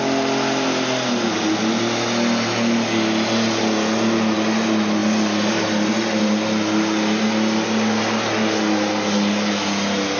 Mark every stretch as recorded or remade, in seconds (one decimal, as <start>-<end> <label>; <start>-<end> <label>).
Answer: 0.0-10.2 recorded